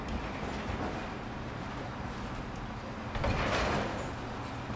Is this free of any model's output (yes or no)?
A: yes